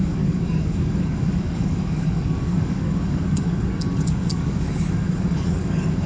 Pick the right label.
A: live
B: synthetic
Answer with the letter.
B